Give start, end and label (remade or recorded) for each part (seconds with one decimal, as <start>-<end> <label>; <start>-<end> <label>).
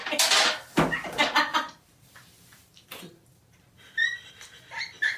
0.0-1.5 recorded; 1.5-4.3 remade; 4.3-5.2 recorded